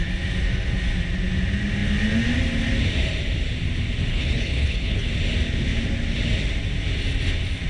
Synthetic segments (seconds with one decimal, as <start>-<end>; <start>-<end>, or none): 4.1-5.1